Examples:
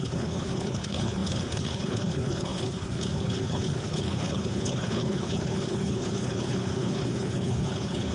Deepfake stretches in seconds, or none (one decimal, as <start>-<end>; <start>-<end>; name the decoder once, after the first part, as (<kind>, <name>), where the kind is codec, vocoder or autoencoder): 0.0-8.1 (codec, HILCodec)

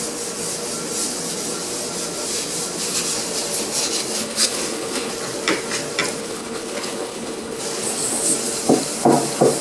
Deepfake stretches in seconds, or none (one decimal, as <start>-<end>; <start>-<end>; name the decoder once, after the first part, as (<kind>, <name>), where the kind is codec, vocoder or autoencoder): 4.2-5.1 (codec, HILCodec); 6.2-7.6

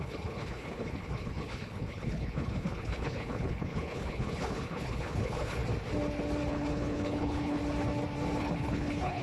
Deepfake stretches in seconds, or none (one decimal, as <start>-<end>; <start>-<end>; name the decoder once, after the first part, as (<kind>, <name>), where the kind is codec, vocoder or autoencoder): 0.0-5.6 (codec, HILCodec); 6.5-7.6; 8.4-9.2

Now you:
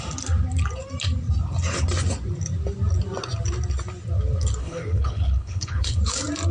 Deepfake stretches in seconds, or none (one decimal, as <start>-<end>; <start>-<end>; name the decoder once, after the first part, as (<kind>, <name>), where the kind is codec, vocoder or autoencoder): 4.6-6.0 (codec, HILCodec)